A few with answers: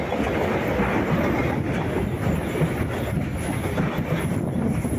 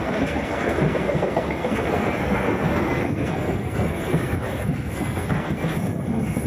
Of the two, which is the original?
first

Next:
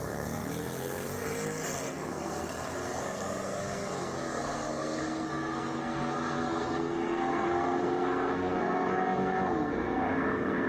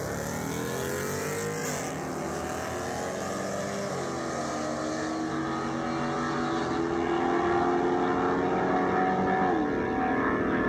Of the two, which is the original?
second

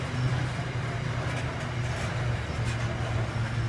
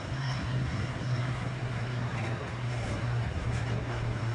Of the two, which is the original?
first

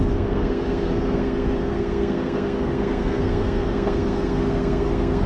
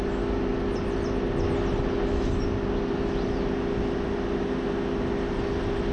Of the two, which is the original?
second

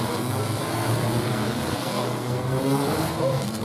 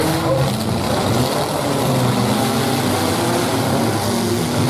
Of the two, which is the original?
second